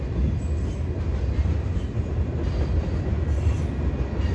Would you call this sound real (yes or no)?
yes